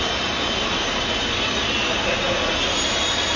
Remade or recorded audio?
recorded